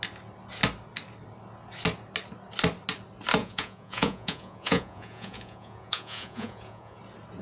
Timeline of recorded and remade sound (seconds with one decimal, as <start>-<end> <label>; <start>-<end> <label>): 0.0-3.4 recorded; 3.4-7.0 remade; 7.0-7.4 recorded